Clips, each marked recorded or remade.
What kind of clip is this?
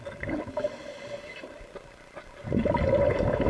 remade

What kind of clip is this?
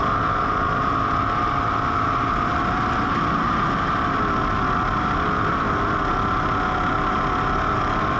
recorded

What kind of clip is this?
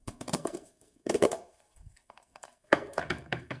remade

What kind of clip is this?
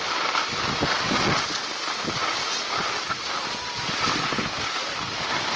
recorded